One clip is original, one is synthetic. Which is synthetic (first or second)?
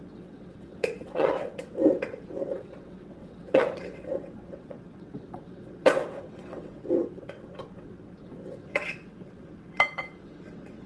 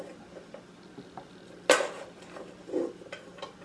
first